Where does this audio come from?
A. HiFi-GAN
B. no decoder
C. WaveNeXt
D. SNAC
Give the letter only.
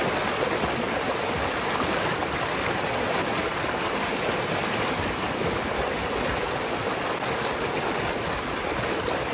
B